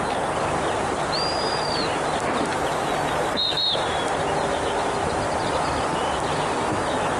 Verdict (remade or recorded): recorded